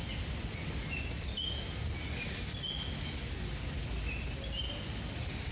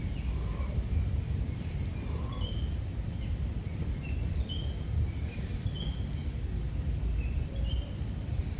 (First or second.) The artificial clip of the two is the second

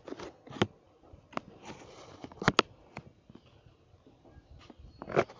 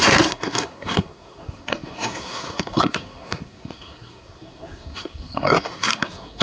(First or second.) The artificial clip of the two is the second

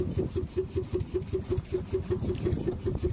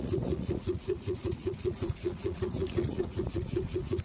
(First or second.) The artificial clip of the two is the second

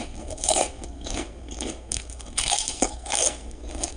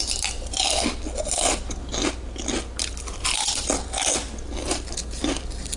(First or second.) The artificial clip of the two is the first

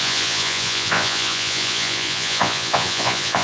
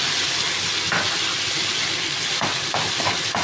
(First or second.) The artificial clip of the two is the first